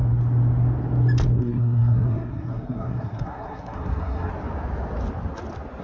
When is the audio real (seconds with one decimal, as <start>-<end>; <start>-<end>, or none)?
0.0-1.4; 4.3-5.8